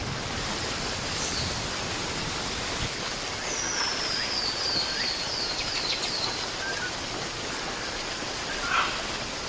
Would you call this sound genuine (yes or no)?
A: yes